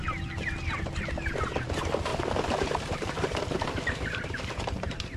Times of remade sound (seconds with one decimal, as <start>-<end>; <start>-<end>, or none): 2.1-5.2